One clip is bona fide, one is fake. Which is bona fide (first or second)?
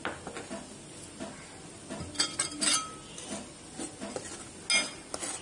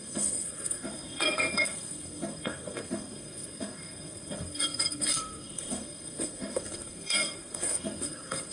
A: first